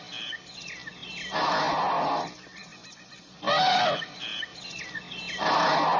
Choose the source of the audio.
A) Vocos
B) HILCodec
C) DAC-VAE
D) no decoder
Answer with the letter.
D